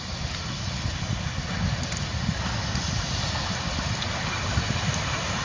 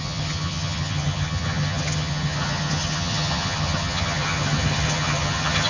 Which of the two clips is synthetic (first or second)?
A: second